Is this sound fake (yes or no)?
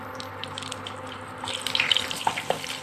yes